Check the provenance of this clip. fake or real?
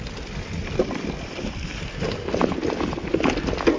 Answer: real